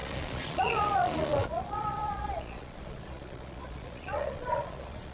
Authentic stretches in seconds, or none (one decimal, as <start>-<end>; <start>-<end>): none